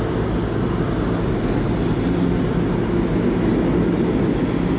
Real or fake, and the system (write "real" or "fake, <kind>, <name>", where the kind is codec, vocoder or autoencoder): real